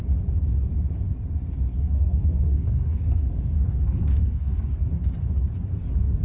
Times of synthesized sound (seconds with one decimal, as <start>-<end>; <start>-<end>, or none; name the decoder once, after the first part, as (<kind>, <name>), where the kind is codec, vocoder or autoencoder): 1.7-4.9 (codec, SNAC)